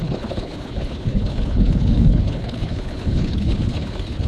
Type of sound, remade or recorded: remade